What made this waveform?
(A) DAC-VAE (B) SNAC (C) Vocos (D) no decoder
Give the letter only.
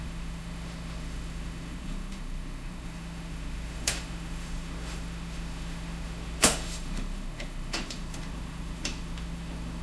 A